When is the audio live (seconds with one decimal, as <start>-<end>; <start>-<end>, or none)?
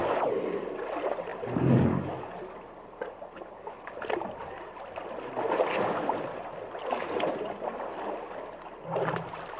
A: 0.0-9.6